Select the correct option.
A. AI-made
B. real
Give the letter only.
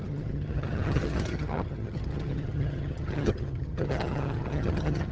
A